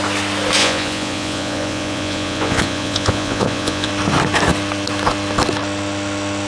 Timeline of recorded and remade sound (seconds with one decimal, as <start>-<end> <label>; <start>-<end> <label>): 0.0-0.6 recorded; 0.6-3.9 remade; 3.9-6.5 recorded